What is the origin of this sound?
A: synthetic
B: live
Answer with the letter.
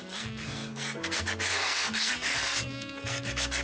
A